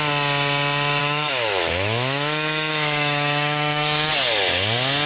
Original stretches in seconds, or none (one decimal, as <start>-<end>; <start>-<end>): 0.0-1.0; 4.1-5.1